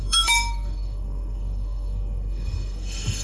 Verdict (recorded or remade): remade